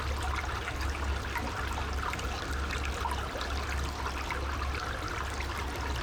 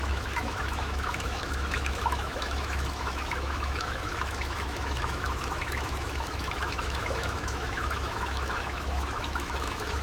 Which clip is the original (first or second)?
first